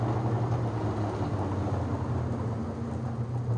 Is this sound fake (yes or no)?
no